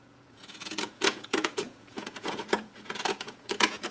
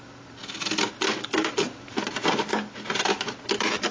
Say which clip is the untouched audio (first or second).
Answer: second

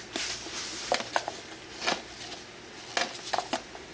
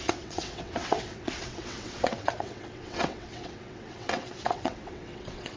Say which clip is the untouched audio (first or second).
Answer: first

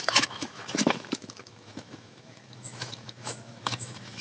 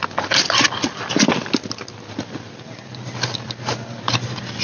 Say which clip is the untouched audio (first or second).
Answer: second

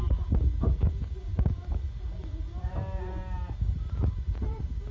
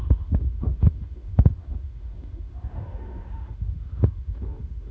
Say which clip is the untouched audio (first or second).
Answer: first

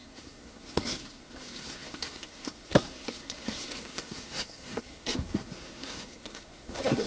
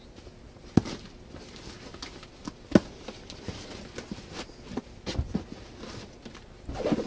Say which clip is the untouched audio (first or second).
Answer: second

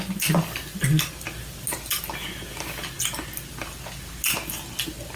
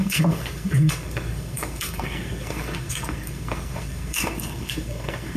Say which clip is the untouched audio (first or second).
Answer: first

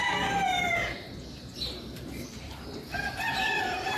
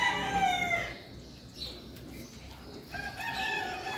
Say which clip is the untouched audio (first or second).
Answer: second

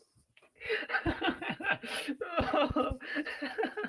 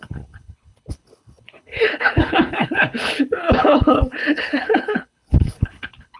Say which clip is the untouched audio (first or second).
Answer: first